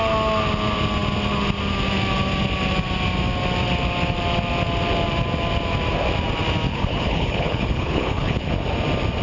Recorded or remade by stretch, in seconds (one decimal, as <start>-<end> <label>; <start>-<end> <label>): 0.0-6.7 recorded; 6.7-8.5 remade; 8.5-9.2 recorded